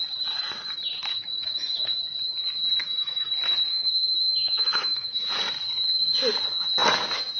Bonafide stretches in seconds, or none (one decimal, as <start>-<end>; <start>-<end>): 0.0-1.1; 1.9-2.8; 3.3-3.7; 5.3-7.4